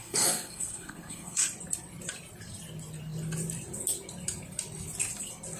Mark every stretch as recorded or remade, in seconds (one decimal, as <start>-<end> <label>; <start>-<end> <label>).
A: 0.0-1.4 remade; 1.4-5.6 recorded